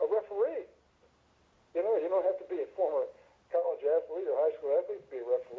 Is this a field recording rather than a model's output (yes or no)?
yes